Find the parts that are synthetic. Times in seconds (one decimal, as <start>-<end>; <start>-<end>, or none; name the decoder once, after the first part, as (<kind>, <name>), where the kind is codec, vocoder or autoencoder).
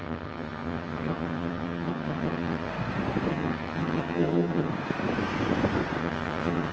0.0-2.7 (vocoder, HiFi-GAN); 3.3-4.7; 6.0-6.7